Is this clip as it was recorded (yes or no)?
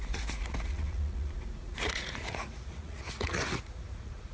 no